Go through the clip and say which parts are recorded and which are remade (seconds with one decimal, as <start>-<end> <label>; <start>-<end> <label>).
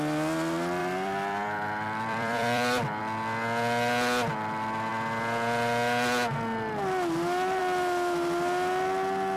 0.0-0.8 recorded; 0.8-3.0 remade; 3.0-9.4 recorded